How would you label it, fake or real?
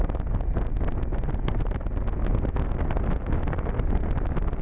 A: real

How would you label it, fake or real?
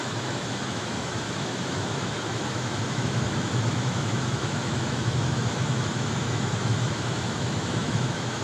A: fake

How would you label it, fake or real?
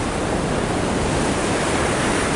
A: real